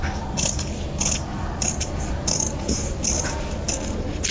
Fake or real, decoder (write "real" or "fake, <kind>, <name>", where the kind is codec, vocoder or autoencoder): real